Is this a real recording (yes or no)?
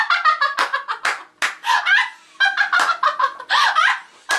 yes